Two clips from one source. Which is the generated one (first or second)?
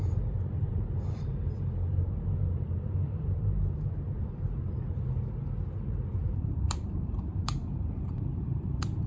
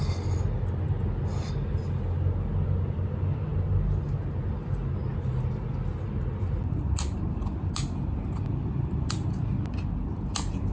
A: first